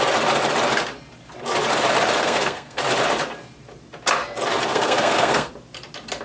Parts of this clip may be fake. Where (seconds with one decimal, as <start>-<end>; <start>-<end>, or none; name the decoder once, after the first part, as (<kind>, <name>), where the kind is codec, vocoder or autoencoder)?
2.2-2.8 (codec, SNAC); 4.7-5.5